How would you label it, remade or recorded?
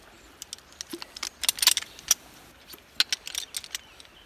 recorded